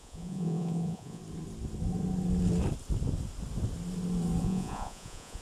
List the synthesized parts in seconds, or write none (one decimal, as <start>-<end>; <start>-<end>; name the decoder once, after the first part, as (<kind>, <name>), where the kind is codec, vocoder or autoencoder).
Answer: 0.0-1.2 (vocoder, Vocos); 4.4-5.4